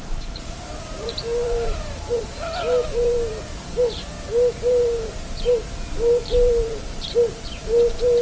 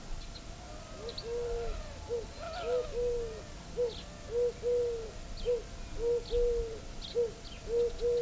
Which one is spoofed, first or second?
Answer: first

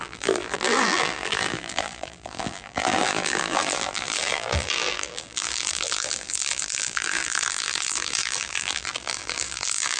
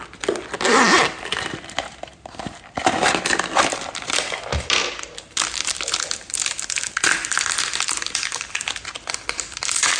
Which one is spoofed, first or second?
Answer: first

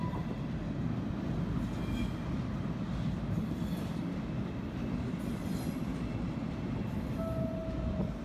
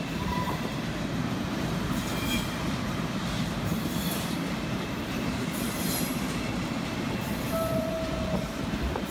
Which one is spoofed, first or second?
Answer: second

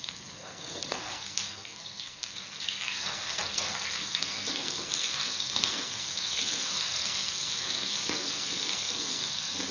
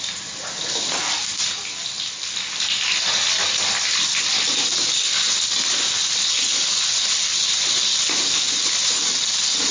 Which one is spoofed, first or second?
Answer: first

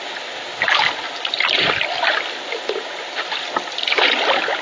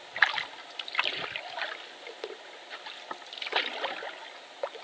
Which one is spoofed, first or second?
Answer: first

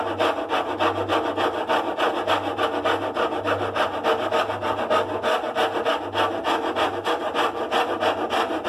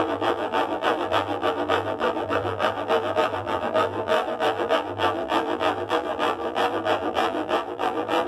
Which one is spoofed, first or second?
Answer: second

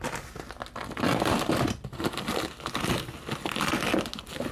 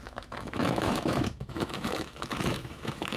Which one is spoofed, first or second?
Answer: second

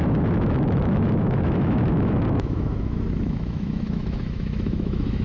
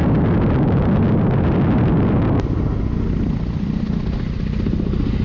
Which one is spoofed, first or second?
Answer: first